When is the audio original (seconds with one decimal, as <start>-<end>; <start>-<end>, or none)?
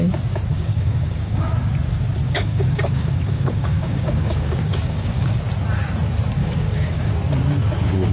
0.0-0.5; 1.4-2.2; 5.4-6.4; 7.1-8.1